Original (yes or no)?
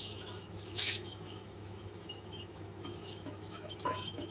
no